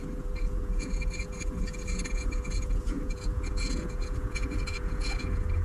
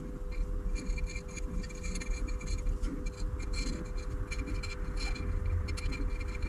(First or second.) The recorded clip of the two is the second